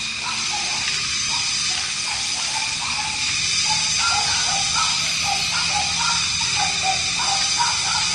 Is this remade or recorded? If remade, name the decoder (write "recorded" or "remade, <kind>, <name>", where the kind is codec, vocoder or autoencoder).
recorded